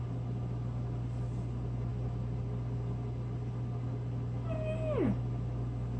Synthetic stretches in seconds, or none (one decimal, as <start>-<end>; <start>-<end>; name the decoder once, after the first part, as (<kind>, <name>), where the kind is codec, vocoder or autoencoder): none